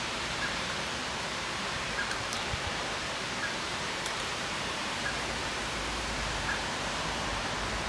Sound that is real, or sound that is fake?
fake